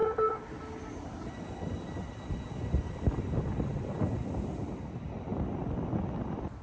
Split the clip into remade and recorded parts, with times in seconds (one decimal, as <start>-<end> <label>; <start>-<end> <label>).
0.0-6.6 recorded